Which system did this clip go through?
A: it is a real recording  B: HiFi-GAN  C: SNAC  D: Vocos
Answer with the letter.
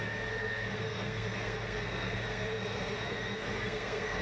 C